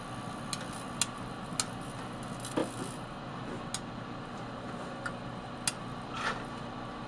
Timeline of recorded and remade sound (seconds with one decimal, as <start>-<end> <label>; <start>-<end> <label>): 0.0-7.1 recorded